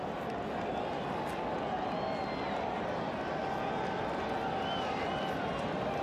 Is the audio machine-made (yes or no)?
no